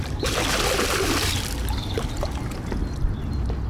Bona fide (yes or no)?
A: yes